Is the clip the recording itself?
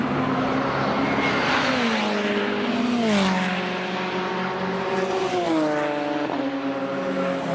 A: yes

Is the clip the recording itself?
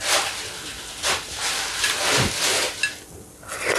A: yes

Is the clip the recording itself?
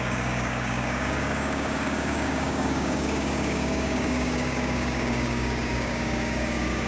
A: no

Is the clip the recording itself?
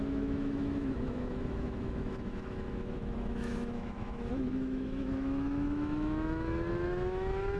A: no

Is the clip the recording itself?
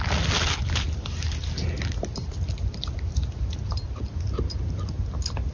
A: yes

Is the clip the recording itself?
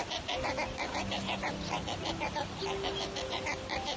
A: yes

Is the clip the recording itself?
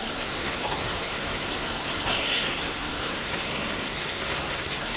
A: no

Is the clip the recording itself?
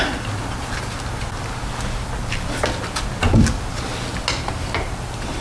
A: yes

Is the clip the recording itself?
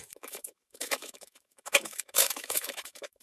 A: no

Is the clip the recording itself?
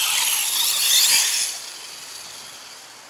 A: yes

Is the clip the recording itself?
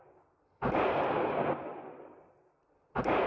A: yes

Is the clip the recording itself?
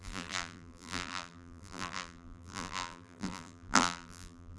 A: no